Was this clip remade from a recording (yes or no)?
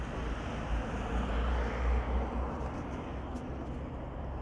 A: no